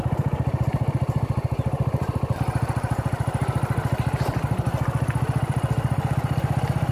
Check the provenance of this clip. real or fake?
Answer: real